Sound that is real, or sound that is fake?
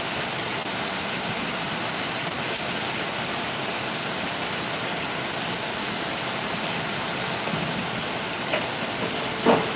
real